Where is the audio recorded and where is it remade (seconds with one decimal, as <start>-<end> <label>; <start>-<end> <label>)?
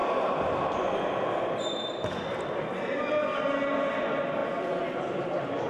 0.0-5.7 recorded